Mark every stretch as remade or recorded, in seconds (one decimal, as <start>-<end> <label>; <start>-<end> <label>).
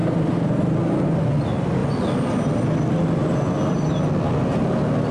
0.0-0.6 remade; 0.6-5.1 recorded